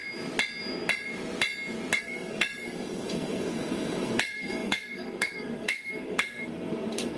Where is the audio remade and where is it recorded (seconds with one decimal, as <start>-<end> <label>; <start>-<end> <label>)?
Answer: 0.0-2.0 recorded; 2.0-7.2 remade